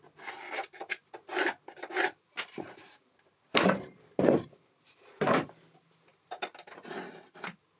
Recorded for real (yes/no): yes